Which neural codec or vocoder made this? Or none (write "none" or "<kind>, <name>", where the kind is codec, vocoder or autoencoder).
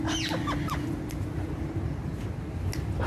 none